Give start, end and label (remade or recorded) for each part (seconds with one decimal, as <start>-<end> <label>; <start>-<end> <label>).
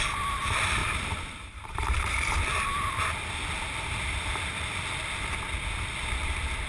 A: 0.0-0.8 recorded; 0.8-3.0 remade; 3.0-6.7 recorded